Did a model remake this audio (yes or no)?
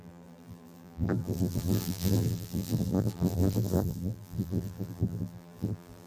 yes